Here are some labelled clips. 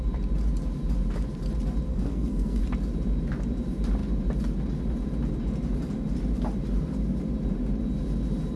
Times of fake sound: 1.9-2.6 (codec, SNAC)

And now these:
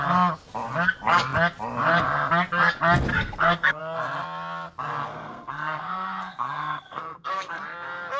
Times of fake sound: 3.1-3.8 (codec, SNAC); 5.1-7.6

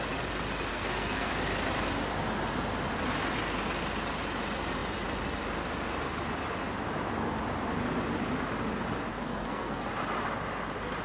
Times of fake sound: 0.7-1.3 (codec, SNAC); 9.1-9.9

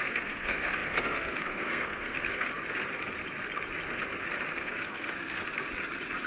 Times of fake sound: 0.0-2.5 (codec, SNAC); 4.6-5.4

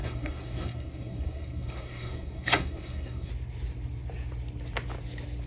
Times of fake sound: 0.0-3.3 (codec, SNAC)

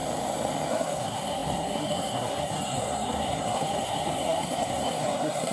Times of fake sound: 0.7-5.5 (codec, SNAC)

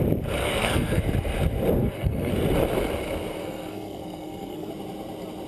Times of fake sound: 0.4-1.0 (codec, SNAC); 1.8-2.3; 3.4-4.7

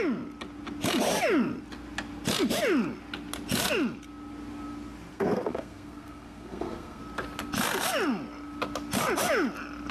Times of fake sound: 5.1-7.0 (codec, SNAC)